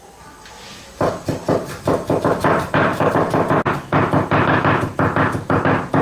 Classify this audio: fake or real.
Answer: real